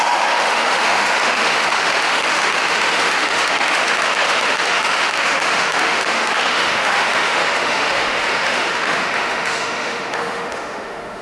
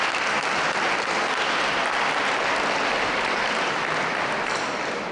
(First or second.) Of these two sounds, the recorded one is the second